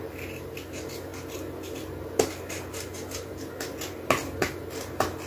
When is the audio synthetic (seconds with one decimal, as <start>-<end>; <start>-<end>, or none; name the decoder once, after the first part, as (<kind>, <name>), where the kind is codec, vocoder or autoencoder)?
none

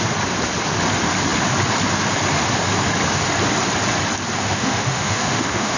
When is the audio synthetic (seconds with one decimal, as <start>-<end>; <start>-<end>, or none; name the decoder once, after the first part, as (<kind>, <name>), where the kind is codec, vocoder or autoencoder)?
4.4-5.8 (autoencoder, DAC-VAE)

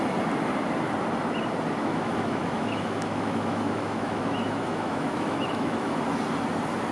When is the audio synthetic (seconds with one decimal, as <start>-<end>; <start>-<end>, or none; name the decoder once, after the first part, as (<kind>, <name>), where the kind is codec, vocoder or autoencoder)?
1.8-5.9 (autoencoder, DAC-VAE)

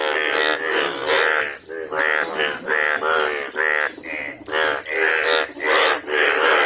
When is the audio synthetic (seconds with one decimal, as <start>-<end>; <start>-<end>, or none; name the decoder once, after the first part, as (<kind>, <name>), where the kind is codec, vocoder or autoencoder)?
none